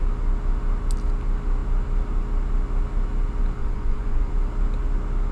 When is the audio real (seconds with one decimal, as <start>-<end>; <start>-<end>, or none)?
0.0-3.6; 4.3-5.3